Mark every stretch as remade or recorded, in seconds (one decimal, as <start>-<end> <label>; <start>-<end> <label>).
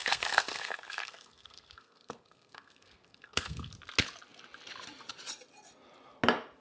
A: 0.0-3.7 remade; 3.7-6.6 recorded